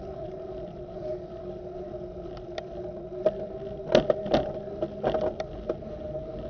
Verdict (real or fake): real